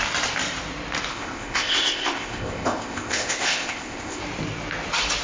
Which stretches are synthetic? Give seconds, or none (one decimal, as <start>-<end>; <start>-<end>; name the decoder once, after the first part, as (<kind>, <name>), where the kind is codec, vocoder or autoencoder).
1.1-4.2 (codec, ZipCodec)